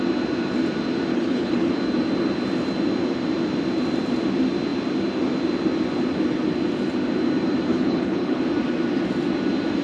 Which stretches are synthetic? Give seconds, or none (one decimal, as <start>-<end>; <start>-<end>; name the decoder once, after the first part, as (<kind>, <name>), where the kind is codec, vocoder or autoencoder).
1.1-1.7 (codec, HILCodec); 7.7-8.4